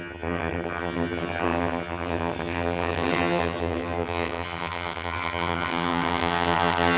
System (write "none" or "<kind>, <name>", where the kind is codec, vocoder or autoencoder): vocoder, HiFi-GAN